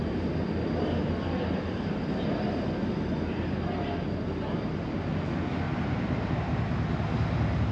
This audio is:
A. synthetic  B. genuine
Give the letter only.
B